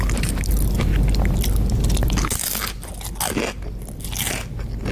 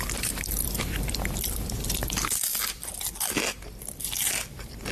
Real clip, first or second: first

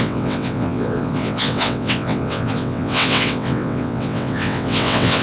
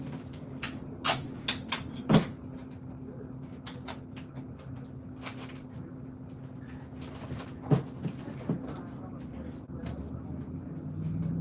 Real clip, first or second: second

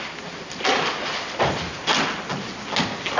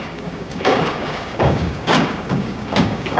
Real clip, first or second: first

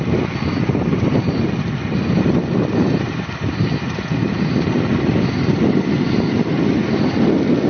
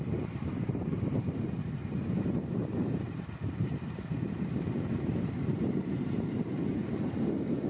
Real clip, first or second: first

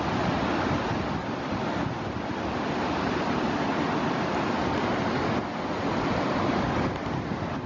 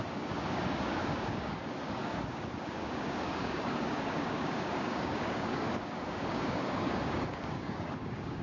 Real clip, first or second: first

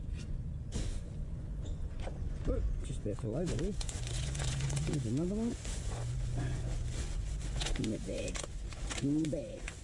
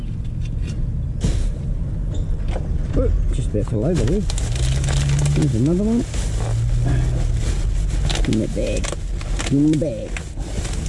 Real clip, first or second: second